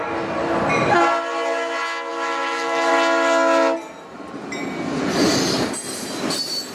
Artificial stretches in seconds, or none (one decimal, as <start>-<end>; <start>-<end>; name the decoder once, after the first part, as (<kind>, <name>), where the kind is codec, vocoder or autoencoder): 2.1-2.9 (autoencoder, DAC-VAE)